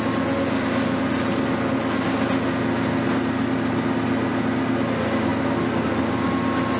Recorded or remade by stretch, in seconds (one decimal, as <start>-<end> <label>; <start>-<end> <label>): 0.0-6.8 recorded